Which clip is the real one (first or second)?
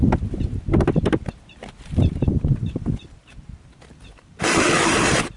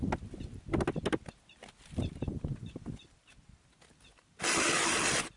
second